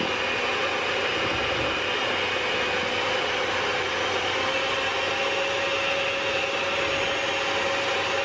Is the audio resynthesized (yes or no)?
no